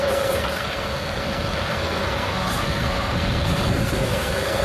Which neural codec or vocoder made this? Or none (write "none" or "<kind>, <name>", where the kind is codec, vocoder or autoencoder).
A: codec, SNAC